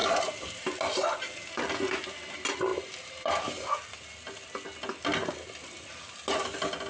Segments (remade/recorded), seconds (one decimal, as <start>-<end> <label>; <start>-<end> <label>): 0.0-6.9 recorded